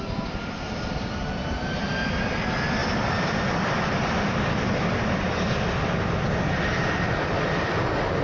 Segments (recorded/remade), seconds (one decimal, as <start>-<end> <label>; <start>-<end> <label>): 0.0-8.2 recorded